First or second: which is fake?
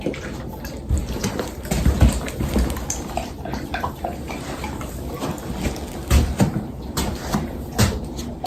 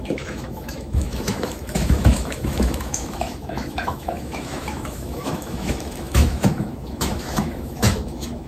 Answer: second